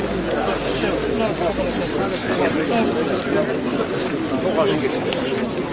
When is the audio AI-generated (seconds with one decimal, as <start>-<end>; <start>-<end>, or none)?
none

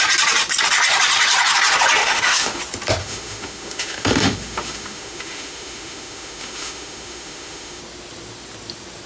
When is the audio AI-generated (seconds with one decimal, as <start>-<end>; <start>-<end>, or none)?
2.0-2.6; 3.0-7.8

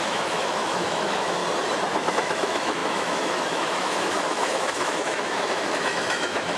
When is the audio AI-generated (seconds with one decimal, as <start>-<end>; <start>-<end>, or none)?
0.0-1.4; 2.1-6.6